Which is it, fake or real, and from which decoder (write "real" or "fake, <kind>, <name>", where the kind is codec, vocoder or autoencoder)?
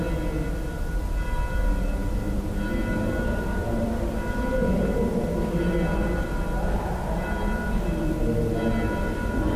real